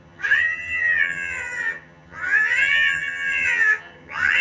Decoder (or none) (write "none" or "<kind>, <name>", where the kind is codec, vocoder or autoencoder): vocoder, HiFi-GAN